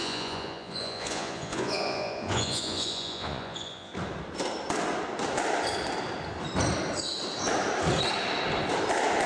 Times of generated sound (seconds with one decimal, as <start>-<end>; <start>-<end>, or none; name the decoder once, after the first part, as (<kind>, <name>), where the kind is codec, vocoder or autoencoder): 0.0-3.9 (vocoder, Vocos)